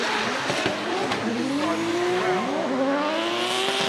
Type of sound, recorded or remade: recorded